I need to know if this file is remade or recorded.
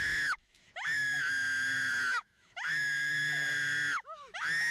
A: remade